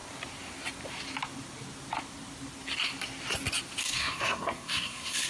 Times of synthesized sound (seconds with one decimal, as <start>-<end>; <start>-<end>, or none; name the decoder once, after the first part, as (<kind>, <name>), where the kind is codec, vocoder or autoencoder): 3.8-5.3 (codec, SNAC)